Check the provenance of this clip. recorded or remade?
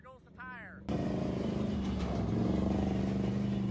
recorded